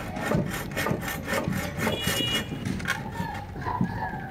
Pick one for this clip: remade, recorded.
recorded